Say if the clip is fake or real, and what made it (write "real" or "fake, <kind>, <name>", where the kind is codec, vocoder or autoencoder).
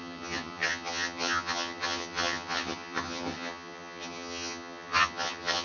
fake, vocoder, HiFi-GAN